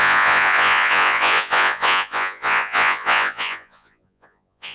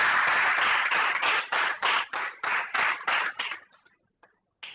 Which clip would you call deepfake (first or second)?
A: first